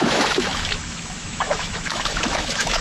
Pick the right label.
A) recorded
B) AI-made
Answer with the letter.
B